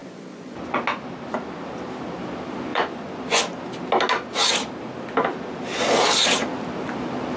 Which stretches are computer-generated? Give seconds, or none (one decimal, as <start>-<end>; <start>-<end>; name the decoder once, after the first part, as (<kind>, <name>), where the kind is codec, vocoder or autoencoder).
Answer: 0.0-0.8 (vocoder, Vocos); 2.7-3.4

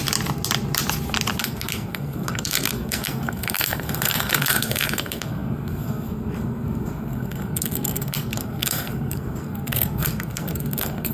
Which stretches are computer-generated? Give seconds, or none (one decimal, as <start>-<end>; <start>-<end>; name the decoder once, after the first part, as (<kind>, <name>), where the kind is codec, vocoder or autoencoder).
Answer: 1.4-11.1 (codec, SNAC)

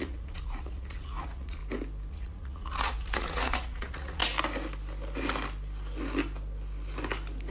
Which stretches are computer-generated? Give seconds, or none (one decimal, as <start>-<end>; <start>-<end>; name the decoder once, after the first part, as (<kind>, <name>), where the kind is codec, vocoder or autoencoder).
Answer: 0.0-1.6 (vocoder, Vocos); 2.1-4.2

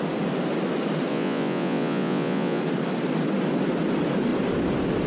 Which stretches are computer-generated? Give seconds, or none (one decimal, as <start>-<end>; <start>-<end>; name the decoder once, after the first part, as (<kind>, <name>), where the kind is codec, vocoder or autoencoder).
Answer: 1.1-2.6 (vocoder, Vocos)